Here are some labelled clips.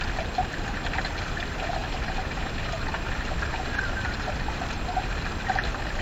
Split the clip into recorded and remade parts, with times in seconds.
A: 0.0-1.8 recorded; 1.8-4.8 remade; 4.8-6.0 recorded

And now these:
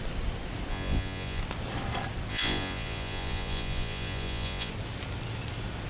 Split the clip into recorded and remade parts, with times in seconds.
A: 0.0-0.7 recorded; 0.7-1.4 remade; 1.4-2.3 recorded; 2.3-4.7 remade; 4.7-5.9 recorded

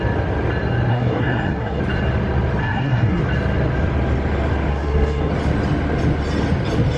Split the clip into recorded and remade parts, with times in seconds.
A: 0.0-0.9 recorded; 0.9-1.8 remade; 1.8-2.6 recorded; 2.6-3.2 remade; 3.2-4.7 recorded; 4.7-5.3 remade; 5.3-7.0 recorded